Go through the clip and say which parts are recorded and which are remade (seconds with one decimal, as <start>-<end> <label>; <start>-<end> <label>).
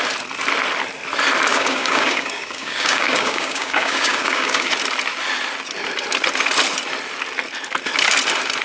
0.0-1.5 recorded; 1.5-4.7 remade; 4.7-8.6 recorded